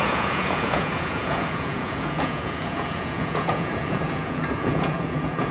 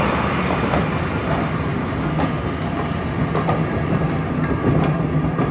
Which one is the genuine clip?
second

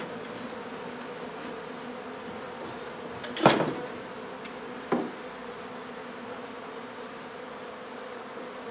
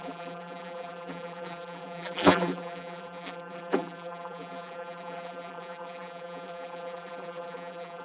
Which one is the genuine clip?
first